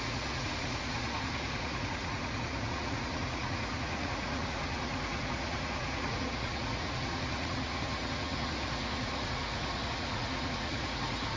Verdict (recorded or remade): remade